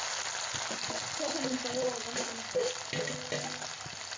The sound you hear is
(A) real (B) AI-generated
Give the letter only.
A